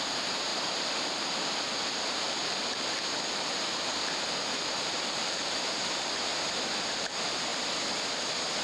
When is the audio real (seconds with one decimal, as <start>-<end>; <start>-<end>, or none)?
6.3-6.8; 7.5-8.6